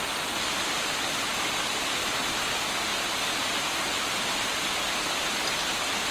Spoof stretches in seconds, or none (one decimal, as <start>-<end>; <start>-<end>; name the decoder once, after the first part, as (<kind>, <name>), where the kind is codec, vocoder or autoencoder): none